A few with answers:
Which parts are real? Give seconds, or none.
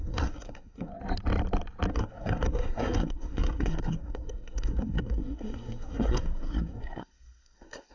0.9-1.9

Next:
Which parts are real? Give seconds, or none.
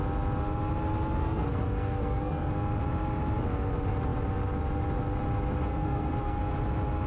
0.0-1.2; 2.5-5.7; 6.4-7.1